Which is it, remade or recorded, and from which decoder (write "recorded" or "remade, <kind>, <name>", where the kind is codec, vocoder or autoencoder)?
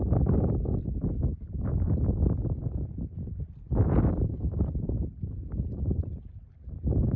recorded